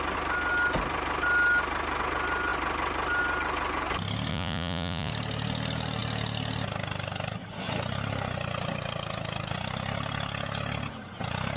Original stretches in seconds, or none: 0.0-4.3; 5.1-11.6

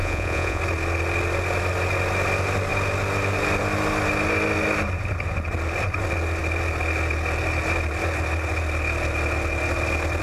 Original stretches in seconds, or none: 0.6-10.2

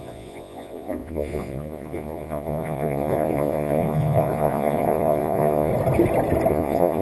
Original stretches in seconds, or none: 5.7-6.5

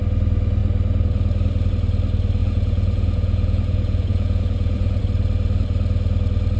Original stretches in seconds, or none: 0.0-2.4; 5.0-6.6

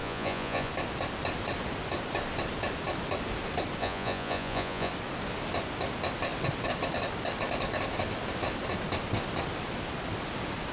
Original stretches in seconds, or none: 0.7-3.8; 4.9-10.7

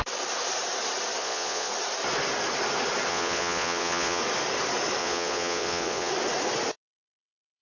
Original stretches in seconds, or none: 0.0-1.2; 1.7-3.1; 4.2-5.0; 6.1-7.6

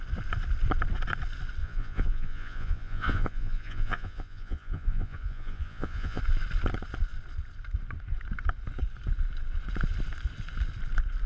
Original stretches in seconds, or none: 0.0-1.6; 6.2-11.3